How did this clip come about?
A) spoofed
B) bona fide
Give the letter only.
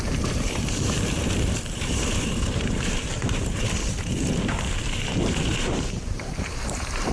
A